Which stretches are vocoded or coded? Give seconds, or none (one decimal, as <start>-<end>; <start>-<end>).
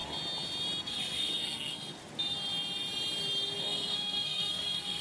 0.8-2.0; 3.6-5.0